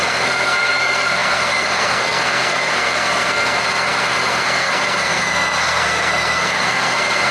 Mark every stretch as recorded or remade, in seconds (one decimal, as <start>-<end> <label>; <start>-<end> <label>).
0.0-7.3 remade